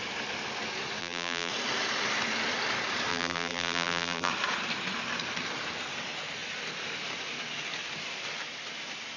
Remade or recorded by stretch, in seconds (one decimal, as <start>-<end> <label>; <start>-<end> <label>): 0.0-1.0 recorded; 1.0-1.5 remade; 1.5-3.1 recorded; 3.1-4.3 remade; 4.3-9.2 recorded